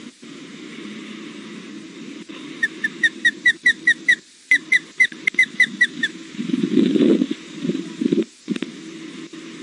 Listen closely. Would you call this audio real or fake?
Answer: fake